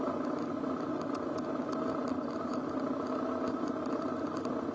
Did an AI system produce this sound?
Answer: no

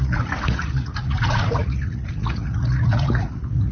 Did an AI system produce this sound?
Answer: yes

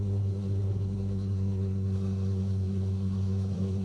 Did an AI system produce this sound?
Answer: yes